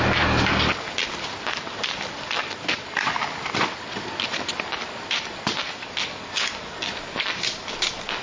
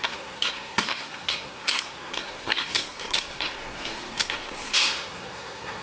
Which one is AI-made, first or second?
second